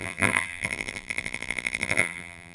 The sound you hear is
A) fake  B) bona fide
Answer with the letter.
A